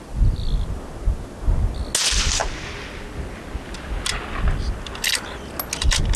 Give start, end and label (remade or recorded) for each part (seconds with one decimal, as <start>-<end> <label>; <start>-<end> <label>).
0.0-6.2 recorded